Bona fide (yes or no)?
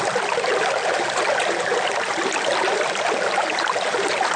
no